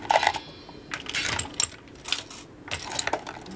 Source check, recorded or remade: recorded